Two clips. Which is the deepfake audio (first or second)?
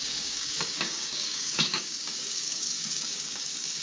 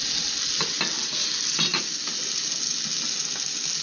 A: first